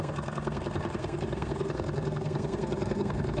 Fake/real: fake